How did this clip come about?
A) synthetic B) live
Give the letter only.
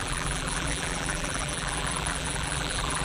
A